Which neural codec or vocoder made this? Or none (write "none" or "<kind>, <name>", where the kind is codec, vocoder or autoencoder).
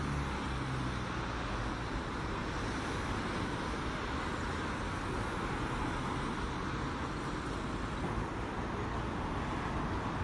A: none